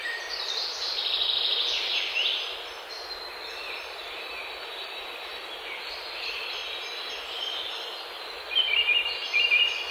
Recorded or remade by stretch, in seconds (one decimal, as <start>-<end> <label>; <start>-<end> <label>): 0.0-6.6 remade; 6.6-7.1 recorded; 7.1-9.9 remade